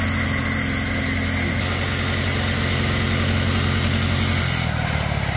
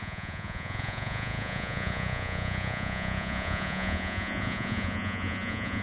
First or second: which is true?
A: first